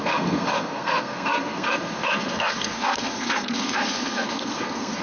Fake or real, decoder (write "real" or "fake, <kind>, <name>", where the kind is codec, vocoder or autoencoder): fake, codec, SNAC